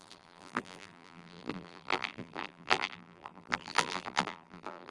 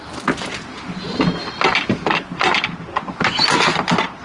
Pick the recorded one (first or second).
second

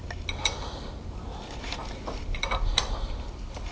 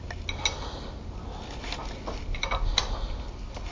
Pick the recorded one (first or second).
second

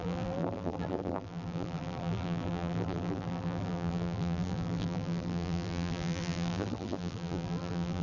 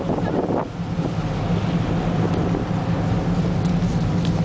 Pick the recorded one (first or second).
second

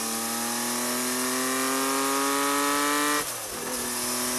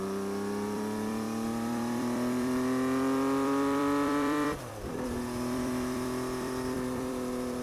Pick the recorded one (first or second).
first